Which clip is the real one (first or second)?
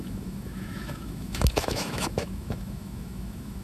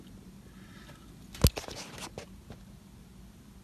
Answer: second